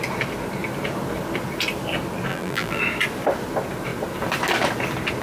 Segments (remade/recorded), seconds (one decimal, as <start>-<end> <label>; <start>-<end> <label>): 0.0-2.3 recorded; 2.3-2.8 remade; 2.8-5.2 recorded